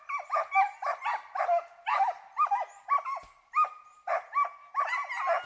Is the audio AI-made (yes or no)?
no